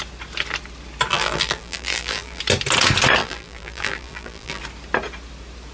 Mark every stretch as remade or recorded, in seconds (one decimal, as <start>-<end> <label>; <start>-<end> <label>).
0.0-1.1 recorded; 1.1-2.4 remade; 2.4-3.2 recorded; 3.2-4.6 remade; 4.6-5.7 recorded